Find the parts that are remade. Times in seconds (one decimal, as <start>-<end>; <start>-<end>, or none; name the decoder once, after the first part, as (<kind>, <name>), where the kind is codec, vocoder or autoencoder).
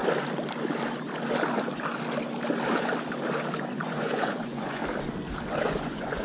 3.7-4.8 (vocoder, Vocos); 5.6-6.2